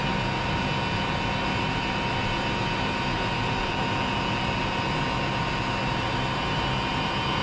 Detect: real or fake real